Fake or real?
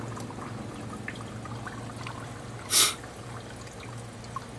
real